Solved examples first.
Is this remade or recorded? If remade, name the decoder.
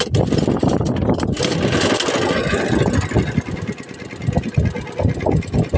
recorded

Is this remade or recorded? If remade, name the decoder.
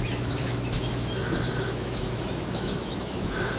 remade, autoencoder, DAC-VAE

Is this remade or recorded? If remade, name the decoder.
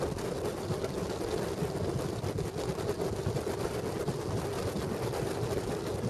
recorded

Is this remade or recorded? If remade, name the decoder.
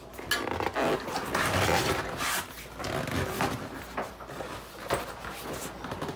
recorded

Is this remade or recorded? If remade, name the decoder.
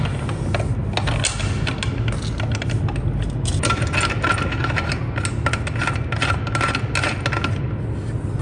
recorded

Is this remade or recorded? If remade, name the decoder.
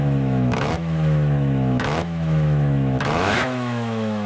remade, autoencoder, DAC-VAE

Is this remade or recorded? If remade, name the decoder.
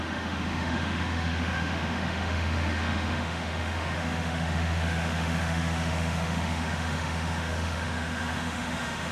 remade, autoencoder, DAC-VAE